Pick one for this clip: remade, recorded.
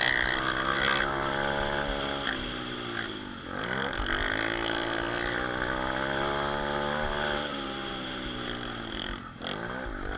recorded